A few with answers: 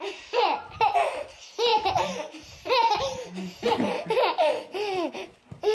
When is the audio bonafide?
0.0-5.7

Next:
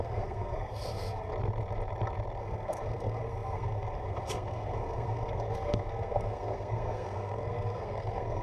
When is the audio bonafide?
1.3-2.4

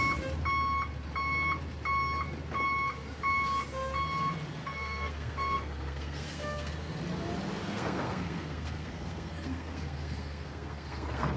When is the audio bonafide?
0.0-4.6; 6.7-7.6

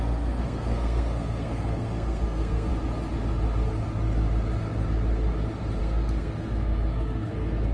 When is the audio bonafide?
2.7-5.8